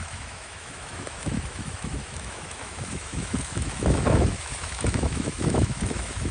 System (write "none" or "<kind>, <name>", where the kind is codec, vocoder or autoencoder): autoencoder, DAC-VAE